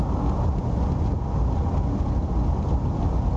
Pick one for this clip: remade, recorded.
recorded